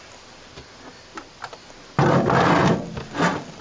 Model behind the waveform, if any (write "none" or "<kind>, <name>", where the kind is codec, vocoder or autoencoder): none